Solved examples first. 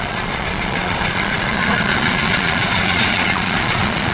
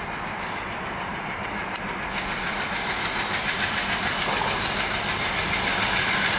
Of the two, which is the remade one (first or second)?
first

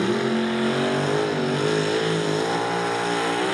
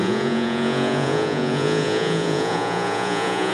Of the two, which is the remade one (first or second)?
second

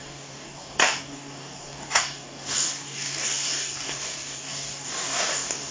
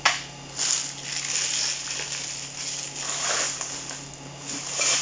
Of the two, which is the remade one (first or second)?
first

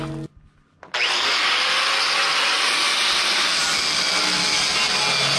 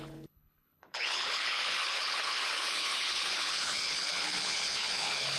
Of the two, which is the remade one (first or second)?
second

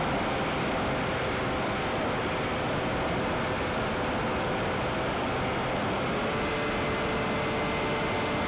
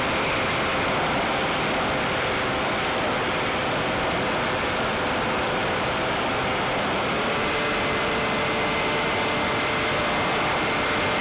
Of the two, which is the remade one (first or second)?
second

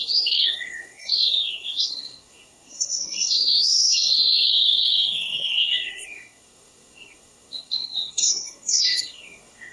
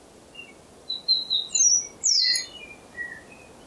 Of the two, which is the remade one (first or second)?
first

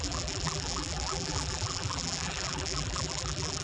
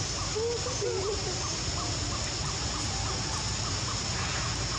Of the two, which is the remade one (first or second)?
first